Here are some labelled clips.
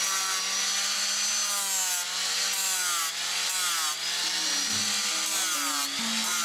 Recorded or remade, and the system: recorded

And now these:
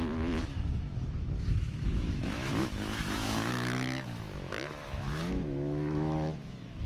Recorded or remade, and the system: remade, autoencoder, DAC-VAE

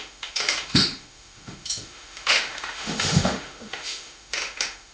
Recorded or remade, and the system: remade, autoencoder, DAC-VAE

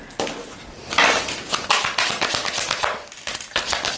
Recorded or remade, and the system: recorded